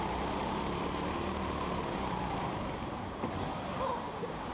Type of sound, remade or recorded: recorded